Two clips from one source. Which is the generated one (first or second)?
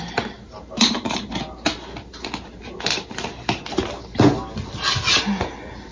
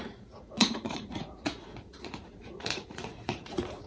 second